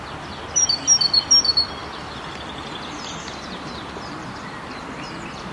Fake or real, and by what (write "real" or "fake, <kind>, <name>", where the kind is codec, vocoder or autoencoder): real